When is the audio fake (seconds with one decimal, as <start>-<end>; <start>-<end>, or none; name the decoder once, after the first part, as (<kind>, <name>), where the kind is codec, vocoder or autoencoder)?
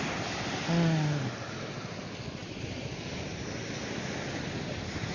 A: none